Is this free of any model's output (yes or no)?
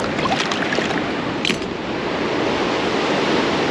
yes